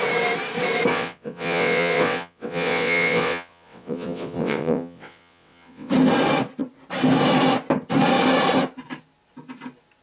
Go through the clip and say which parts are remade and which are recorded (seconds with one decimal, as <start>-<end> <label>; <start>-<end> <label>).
0.0-0.9 recorded; 0.9-5.9 remade; 5.9-10.0 recorded